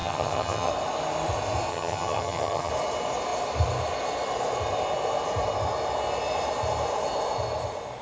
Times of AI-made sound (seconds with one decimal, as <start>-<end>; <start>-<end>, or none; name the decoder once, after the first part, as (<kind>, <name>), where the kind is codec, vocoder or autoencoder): 0.0-0.7 (vocoder, HiFi-GAN); 1.7-2.7